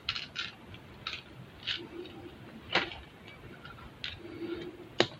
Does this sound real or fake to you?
real